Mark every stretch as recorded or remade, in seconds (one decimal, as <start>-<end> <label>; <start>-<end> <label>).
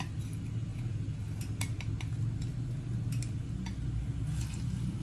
0.0-5.0 recorded